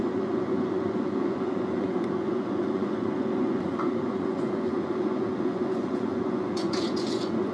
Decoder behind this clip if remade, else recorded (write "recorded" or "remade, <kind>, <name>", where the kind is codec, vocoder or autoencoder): remade, vocoder, Vocos